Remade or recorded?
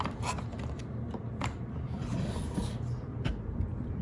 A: recorded